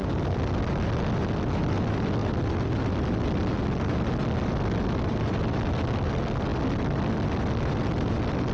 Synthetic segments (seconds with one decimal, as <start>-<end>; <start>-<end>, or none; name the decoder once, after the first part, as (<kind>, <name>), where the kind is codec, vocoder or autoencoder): none